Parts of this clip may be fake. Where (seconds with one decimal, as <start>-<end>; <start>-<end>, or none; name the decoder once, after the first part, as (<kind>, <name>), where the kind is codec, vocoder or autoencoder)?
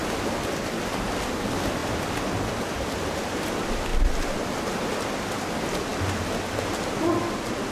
none